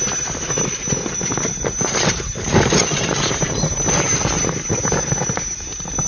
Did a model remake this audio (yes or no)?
no